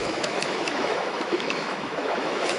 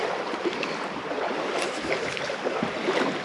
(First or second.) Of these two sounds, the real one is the second